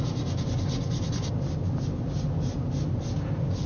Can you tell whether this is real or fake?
real